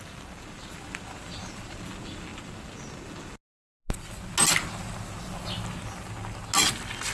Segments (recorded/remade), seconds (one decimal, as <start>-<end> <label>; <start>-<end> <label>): 0.0-7.1 recorded

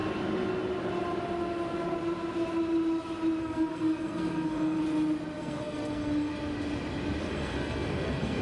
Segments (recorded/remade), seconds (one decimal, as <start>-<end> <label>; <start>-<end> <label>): 0.0-3.4 recorded; 3.4-4.8 remade; 4.8-5.4 recorded; 5.4-6.3 remade; 6.3-7.2 recorded; 7.2-8.4 remade

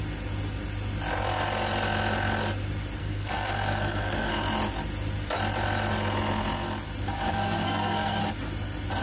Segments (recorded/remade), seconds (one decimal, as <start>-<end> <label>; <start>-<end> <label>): 0.0-3.0 recorded; 3.0-4.3 remade; 4.3-7.3 recorded; 7.3-8.2 remade; 8.2-9.0 recorded

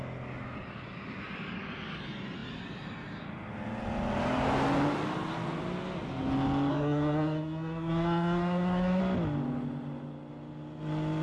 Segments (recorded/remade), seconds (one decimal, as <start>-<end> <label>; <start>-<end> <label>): 0.0-6.7 recorded; 6.7-9.0 remade; 9.0-11.2 recorded

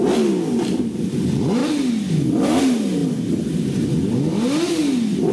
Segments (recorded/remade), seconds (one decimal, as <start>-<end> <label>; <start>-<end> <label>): 0.0-5.3 recorded